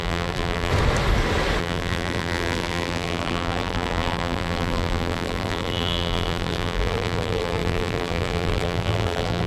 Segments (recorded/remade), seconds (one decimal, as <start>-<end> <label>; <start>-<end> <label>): 0.0-0.7 remade; 0.7-1.6 recorded; 1.6-9.5 remade